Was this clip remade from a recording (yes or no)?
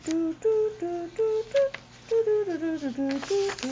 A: no